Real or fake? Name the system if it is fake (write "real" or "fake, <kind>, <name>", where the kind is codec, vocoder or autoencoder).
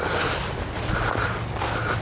real